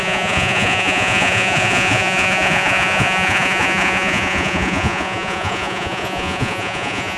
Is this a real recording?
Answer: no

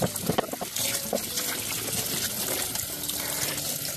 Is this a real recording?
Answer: yes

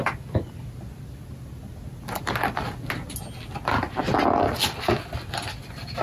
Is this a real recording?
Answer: yes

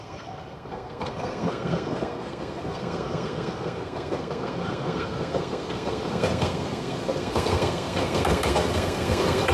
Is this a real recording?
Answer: no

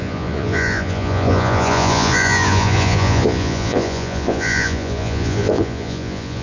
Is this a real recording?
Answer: no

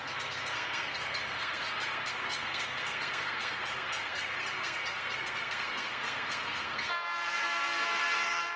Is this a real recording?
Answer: no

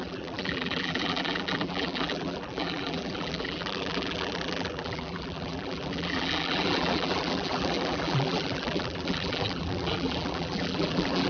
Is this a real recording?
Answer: no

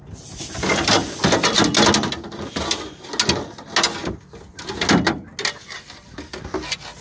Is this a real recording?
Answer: yes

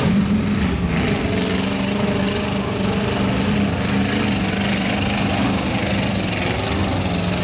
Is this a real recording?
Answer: yes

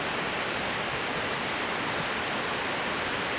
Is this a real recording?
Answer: yes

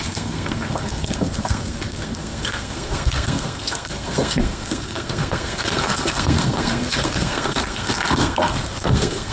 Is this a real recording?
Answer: no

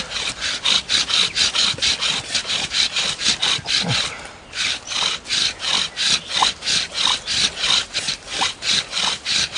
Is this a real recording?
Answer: yes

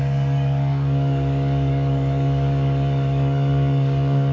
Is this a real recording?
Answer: no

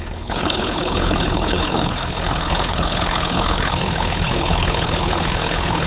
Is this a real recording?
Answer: no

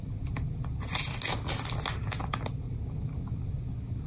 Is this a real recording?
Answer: yes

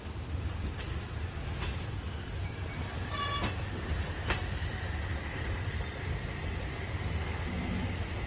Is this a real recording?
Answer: yes